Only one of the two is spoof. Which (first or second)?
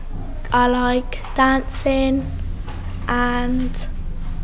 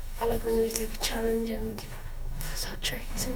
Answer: second